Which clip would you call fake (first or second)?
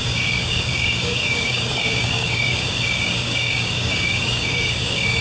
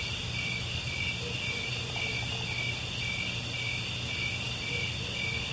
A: first